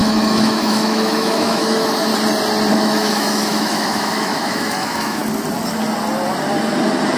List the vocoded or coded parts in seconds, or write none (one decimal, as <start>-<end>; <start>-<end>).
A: 0.0-2.1; 2.7-5.2